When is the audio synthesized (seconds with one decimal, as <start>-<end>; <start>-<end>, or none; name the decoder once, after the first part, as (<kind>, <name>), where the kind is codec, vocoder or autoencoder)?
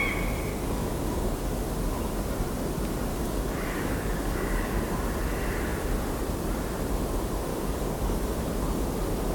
0.5-1.7 (codec, DAC); 3.1-4.6; 7.5-8.6